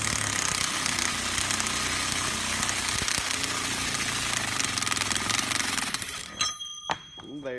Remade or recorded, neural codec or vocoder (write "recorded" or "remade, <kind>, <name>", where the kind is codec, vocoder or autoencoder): recorded